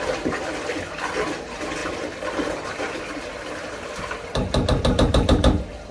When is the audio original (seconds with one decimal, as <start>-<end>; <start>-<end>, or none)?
0.0-5.9